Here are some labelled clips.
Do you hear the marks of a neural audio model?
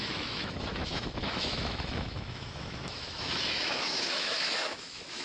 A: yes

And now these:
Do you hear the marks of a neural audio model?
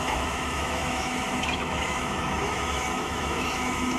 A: yes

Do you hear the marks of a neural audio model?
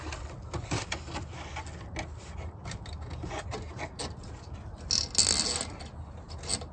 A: no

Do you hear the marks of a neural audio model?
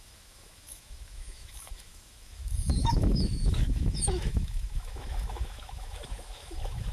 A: yes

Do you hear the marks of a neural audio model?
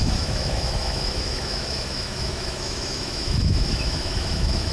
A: yes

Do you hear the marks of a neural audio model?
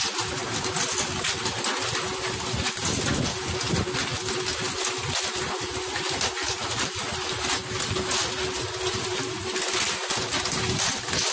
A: no